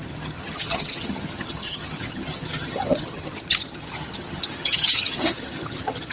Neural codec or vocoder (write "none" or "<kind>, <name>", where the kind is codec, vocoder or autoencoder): vocoder, HiFi-GAN